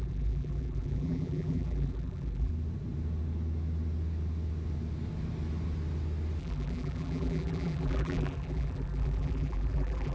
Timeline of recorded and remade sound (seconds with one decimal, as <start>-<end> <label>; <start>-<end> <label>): 0.0-2.5 remade; 2.5-6.4 recorded; 6.4-10.1 remade